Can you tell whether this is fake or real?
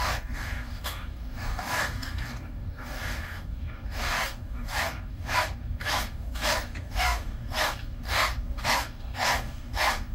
fake